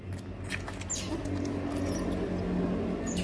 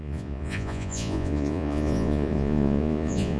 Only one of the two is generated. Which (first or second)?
second